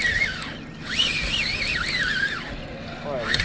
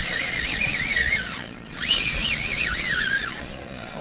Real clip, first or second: first